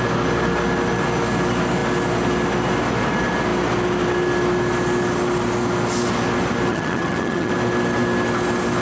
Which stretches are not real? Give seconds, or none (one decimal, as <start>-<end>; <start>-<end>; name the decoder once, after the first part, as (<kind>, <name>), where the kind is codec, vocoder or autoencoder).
6.7-7.5 (vocoder, HiFi-GAN)